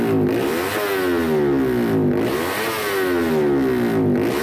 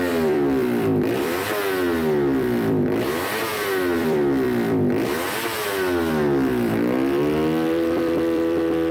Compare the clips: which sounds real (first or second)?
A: first